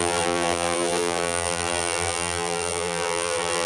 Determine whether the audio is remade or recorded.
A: remade